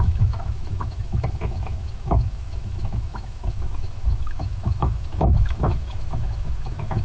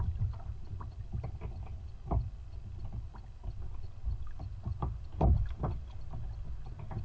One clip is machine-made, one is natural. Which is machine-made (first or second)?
first